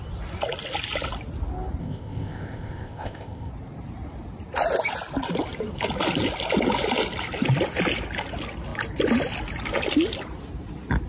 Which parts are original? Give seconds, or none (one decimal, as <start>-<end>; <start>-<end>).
0.0-1.8; 3.5-11.1